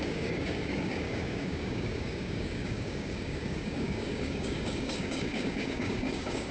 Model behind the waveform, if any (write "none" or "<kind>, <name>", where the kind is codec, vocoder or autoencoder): codec, DAC